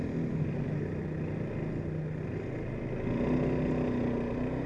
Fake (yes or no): no